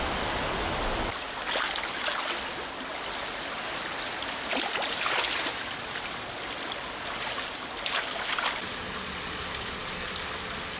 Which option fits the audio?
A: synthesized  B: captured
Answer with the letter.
B